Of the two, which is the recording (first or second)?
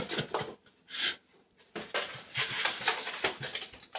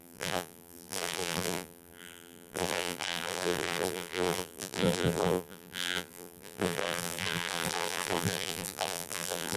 first